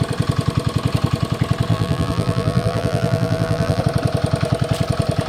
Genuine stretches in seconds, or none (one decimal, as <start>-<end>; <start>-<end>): 0.0-1.7; 3.8-5.3